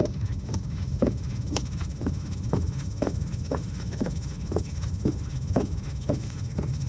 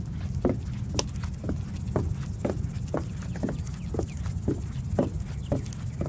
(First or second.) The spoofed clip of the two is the first